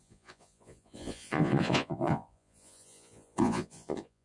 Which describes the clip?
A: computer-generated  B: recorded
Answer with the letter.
A